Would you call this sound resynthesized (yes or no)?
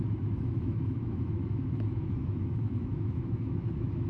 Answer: yes